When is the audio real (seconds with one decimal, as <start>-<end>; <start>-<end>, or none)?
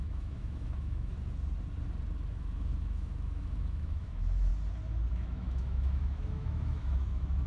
1.1-2.3; 4.5-5.1